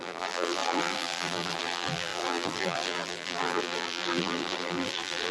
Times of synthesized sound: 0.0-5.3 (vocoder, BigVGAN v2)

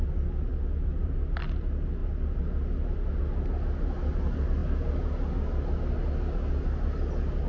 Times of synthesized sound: 0.5-1.2 (vocoder, BigVGAN v2)

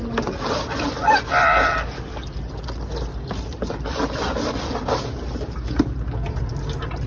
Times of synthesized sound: none

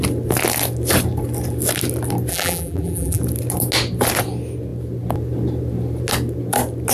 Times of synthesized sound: 2.3-3.2 (vocoder, BigVGAN v2)

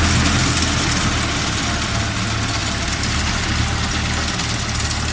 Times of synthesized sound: 2.6-3.3 (vocoder, BigVGAN v2)

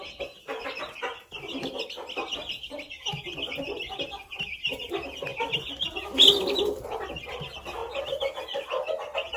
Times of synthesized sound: 5.3-7.1 (vocoder, BigVGAN v2); 7.8-8.7

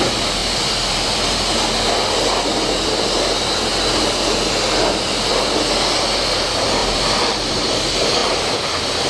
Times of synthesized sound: 0.4-1.1 (vocoder, BigVGAN v2); 6.8-7.5; 8.2-8.7